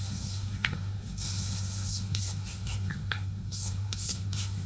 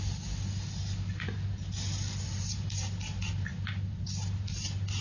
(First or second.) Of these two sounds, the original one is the second